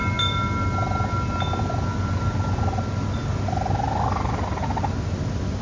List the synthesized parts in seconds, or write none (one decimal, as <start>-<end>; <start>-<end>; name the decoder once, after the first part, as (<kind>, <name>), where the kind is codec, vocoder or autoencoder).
none